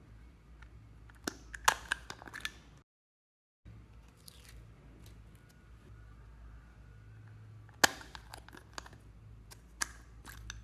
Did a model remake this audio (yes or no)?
no